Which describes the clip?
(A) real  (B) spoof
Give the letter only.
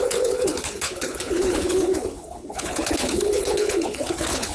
B